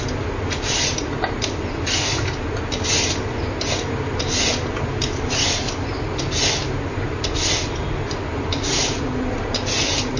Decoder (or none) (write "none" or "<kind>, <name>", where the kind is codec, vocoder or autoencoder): none